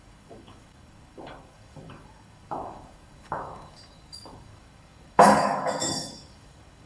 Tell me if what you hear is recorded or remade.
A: remade